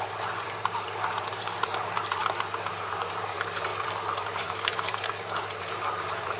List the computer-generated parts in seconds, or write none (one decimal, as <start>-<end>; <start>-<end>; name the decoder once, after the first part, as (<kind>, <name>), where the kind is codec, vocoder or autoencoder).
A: 0.0-2.2 (vocoder, BigVGAN v2); 2.7-6.4